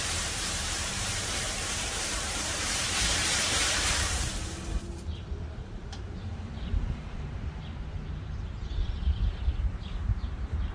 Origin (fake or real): fake